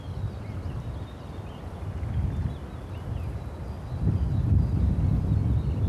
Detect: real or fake real